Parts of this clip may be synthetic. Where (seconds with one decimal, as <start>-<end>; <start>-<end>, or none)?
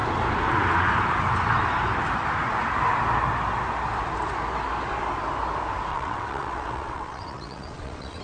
5.9-8.2